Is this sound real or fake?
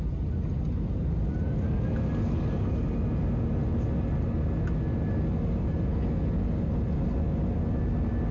real